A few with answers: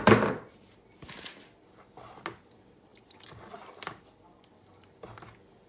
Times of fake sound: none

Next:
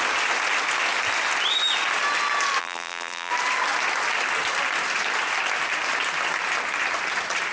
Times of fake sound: 2.6-3.3 (vocoder, BigVGAN v2)

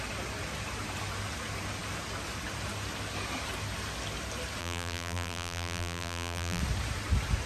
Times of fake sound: 4.6-6.6 (vocoder, BigVGAN v2)

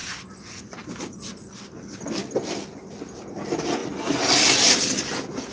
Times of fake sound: none

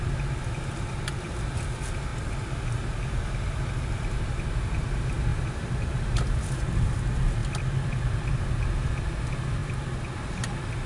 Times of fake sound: 5.3-6.7 (vocoder, BigVGAN v2)

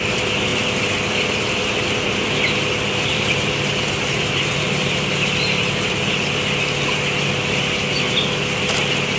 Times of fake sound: 3.1-5.1 (vocoder, BigVGAN v2)

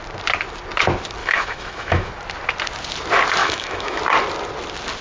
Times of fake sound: 1.2-2.1 (autoencoder, DAC-VAE); 3.4-4.0